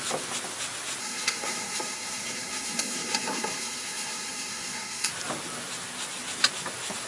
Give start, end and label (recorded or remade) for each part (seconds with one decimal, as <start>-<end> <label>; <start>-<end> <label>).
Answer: 0.0-1.0 recorded; 1.0-5.1 remade; 5.1-7.1 recorded